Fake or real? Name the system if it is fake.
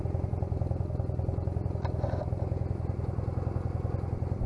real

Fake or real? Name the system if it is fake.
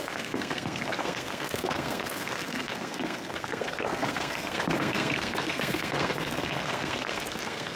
fake, codec, SNAC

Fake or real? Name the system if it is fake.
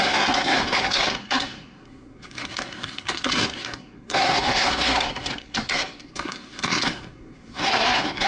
fake, codec, SNAC